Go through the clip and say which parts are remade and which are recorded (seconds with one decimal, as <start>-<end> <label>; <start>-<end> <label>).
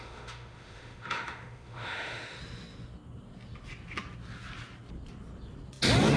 0.0-2.4 remade; 2.4-6.2 recorded